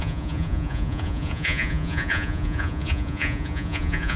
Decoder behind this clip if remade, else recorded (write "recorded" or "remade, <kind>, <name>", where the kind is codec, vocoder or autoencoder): remade, vocoder, Vocos